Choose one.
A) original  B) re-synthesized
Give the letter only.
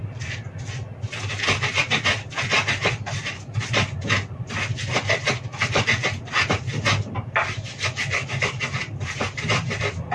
A